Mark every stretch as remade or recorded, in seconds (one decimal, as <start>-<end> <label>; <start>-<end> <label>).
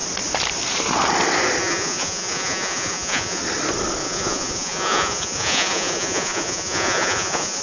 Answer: 0.0-1.6 recorded; 1.6-3.4 remade; 3.4-4.0 recorded; 4.0-7.6 remade